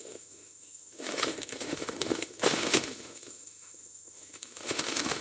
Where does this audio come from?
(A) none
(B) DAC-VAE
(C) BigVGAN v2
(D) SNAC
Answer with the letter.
B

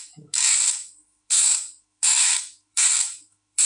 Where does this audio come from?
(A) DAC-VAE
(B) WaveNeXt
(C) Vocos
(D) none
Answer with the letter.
A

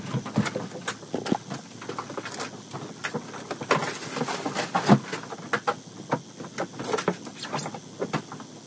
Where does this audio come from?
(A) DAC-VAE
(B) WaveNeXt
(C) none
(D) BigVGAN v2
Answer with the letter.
C